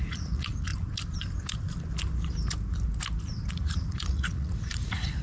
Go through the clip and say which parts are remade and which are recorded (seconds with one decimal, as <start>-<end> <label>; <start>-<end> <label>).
0.0-0.7 remade; 0.7-3.5 recorded; 3.5-5.2 remade